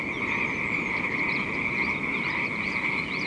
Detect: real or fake real